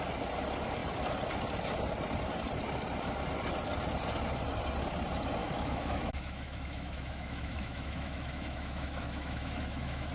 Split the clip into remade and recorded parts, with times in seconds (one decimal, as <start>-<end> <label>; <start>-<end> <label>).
0.0-5.4 recorded; 5.4-10.1 remade